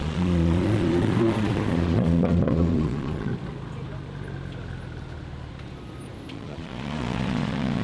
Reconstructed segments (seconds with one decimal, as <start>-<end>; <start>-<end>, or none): 0.0-3.3; 6.3-7.8